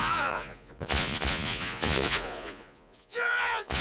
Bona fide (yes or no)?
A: no